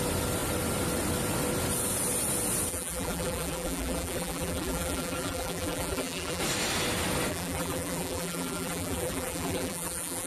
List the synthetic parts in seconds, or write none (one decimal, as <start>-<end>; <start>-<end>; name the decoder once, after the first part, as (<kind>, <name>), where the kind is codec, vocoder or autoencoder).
2.7-6.4 (vocoder, BigVGAN v2); 7.3-10.3